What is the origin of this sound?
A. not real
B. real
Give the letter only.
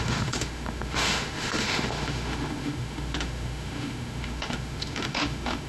A